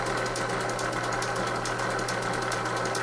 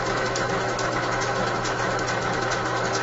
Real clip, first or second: first